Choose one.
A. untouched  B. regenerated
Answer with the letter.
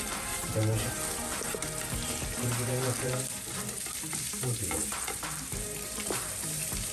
B